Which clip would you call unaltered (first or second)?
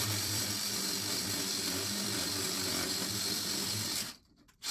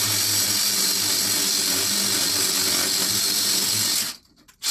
second